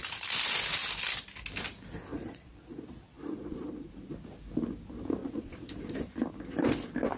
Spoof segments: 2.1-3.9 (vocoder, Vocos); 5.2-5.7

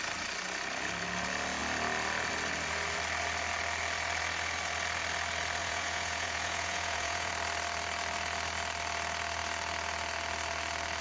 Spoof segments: 5.6-7.3 (vocoder, Vocos)

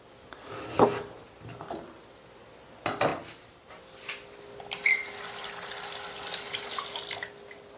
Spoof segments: none

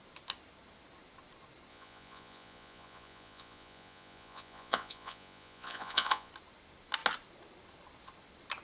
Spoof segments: 1.7-6.3 (vocoder, Vocos)